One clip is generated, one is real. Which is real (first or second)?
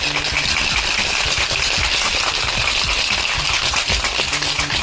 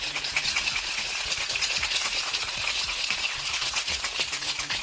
first